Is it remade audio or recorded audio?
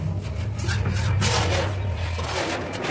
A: recorded